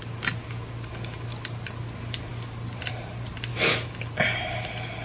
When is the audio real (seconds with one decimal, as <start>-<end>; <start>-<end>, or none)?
0.0-3.5; 4.0-5.0